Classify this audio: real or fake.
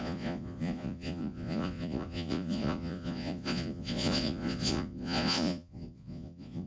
fake